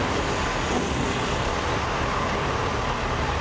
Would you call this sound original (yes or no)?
yes